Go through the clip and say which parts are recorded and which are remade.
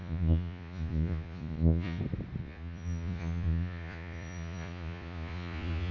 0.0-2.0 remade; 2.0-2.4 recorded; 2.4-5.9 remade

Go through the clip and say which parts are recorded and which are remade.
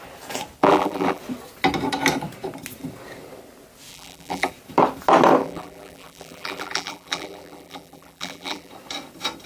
0.0-0.6 recorded; 0.6-1.2 remade; 1.2-3.9 recorded; 3.9-4.5 remade; 4.5-5.4 recorded; 5.4-8.7 remade; 8.7-9.5 recorded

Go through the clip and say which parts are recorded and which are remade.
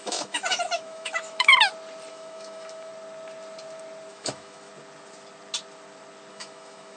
0.0-1.5 remade; 1.5-2.1 recorded; 2.1-2.9 remade; 2.9-4.1 recorded; 4.1-4.7 remade; 4.7-6.3 recorded; 6.3-7.0 remade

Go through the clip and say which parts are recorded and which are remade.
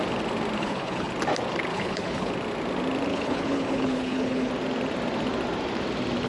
0.0-0.6 recorded; 0.6-1.1 remade; 1.1-1.7 recorded; 1.7-2.3 remade; 2.3-3.1 recorded; 3.1-4.5 remade; 4.5-6.3 recorded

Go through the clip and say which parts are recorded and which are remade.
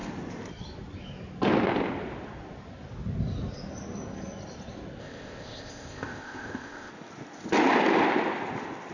0.0-5.0 recorded; 5.0-6.9 remade; 6.9-8.9 recorded